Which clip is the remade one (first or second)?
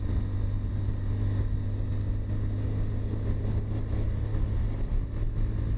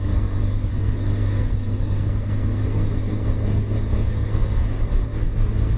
second